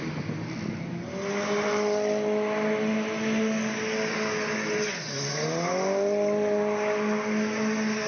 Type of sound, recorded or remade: recorded